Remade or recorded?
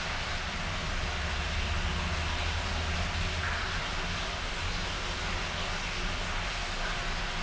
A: recorded